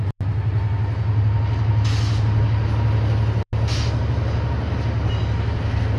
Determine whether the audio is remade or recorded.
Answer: recorded